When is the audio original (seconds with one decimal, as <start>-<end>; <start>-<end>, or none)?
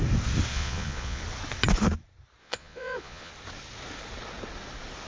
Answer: 0.0-0.5; 1.2-2.4; 3.3-5.1